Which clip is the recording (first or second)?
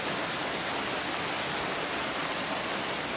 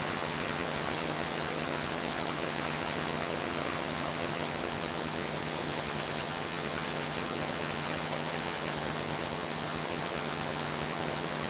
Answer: first